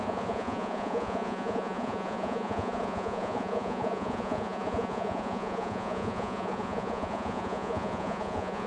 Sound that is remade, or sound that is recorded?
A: remade